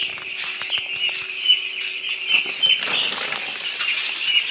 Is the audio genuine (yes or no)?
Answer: yes